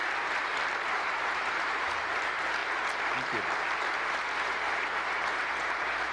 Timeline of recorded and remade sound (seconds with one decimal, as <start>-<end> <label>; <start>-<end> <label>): 0.0-0.9 recorded; 0.9-2.6 remade; 2.6-4.4 recorded; 4.4-6.1 remade